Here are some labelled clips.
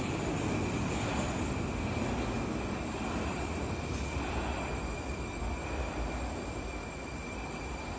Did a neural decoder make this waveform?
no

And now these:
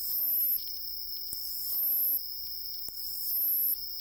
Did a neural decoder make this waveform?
no